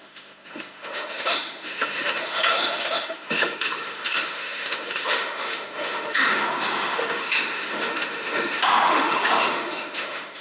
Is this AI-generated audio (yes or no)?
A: yes